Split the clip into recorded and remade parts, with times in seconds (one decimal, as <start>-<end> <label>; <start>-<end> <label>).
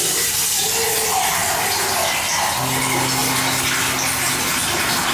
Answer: 0.0-5.1 recorded